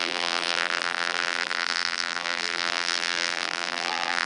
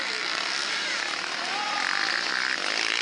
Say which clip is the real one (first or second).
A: second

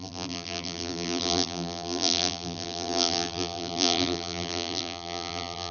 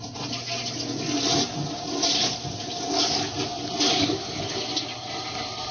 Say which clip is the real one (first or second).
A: second